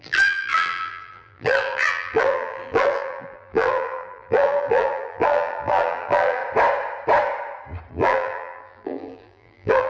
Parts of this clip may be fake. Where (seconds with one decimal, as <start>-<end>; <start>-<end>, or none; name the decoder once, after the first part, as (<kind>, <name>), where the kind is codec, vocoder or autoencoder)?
0.0-6.4 (vocoder, BigVGAN v2); 7.9-9.9